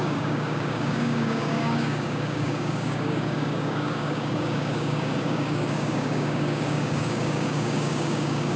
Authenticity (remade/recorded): remade